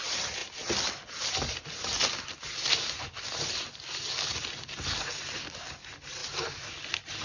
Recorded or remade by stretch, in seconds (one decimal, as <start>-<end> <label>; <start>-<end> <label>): 0.0-7.2 recorded